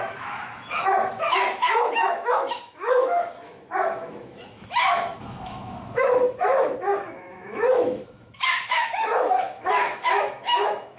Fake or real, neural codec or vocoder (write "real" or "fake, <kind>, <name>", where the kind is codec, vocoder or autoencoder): fake, autoencoder, DAC-VAE